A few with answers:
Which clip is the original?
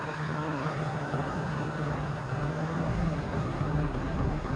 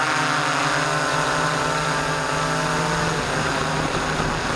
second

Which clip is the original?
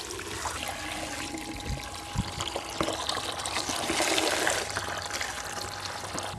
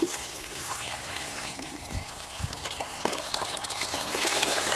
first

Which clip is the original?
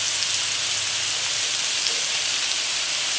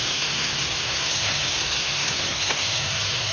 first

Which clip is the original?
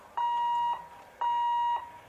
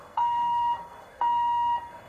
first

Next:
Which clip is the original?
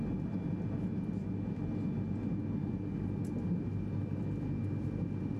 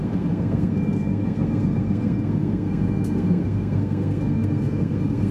first